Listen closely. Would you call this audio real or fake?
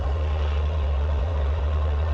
fake